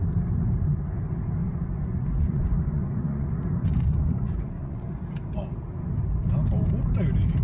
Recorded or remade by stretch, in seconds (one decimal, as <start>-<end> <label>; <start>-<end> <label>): 0.0-1.4 recorded; 1.4-3.3 remade; 3.3-3.7 recorded; 3.7-4.9 remade; 4.9-7.4 recorded